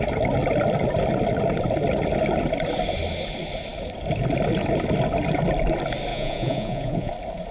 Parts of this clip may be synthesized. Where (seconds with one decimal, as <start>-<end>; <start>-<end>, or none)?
6.1-7.1